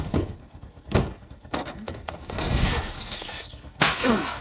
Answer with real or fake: fake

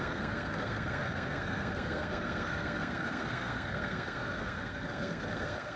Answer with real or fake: fake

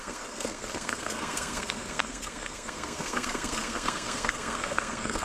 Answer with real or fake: fake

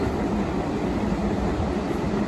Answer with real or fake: real